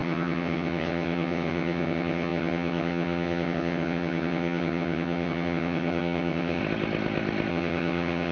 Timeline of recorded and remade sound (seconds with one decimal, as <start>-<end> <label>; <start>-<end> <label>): 0.0-6.6 remade; 6.6-7.5 recorded; 7.5-8.3 remade